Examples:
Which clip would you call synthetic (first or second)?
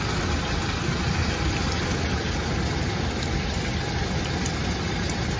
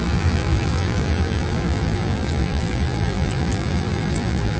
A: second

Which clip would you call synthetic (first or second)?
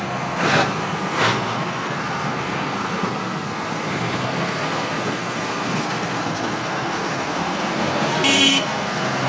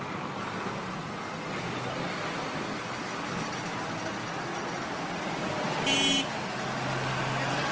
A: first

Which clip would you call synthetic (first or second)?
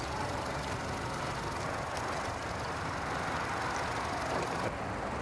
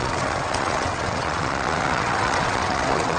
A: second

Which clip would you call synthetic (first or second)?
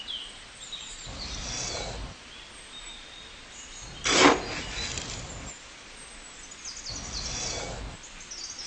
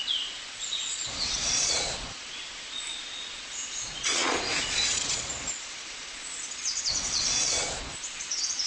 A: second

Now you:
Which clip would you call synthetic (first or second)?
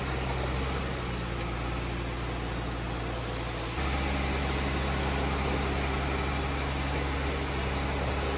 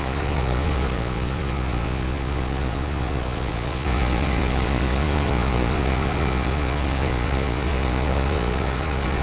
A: second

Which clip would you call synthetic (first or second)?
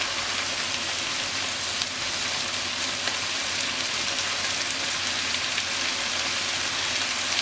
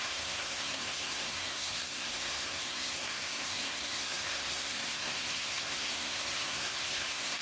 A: second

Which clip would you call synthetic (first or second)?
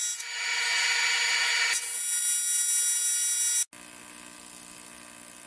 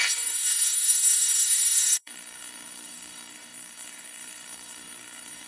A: second